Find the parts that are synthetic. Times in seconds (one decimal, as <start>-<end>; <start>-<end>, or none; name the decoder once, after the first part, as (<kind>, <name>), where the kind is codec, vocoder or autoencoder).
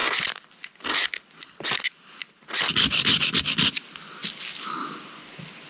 none